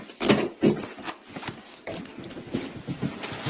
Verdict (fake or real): real